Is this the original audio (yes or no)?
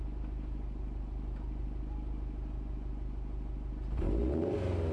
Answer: yes